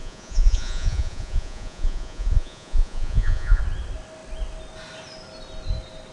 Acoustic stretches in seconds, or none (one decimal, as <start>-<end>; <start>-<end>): 3.6-6.1